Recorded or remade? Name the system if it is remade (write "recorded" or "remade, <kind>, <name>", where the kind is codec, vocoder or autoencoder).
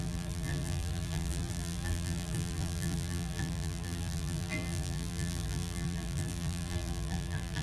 remade, vocoder, BigVGAN v2